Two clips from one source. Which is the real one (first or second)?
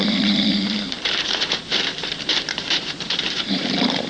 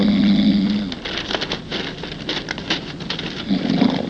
second